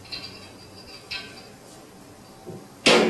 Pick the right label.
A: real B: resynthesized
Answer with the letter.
A